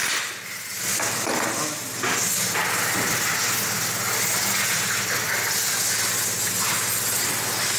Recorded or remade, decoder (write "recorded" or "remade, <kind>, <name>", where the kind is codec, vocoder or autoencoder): recorded